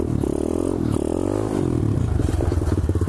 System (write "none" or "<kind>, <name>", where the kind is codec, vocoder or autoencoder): none